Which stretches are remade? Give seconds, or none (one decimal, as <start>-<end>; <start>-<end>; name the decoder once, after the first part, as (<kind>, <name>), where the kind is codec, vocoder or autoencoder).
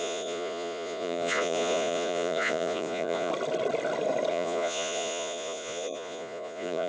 0.0-3.3 (vocoder, Vocos); 4.3-6.9